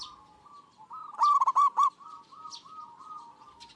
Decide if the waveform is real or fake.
real